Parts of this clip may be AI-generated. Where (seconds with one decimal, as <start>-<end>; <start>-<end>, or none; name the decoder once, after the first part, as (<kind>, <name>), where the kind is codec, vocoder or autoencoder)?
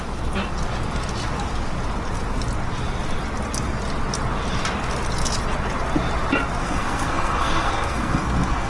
6.6-8.7 (codec, SNAC)